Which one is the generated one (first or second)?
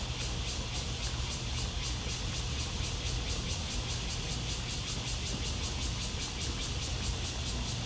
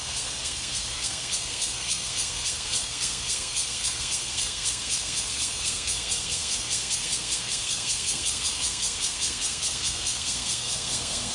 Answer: second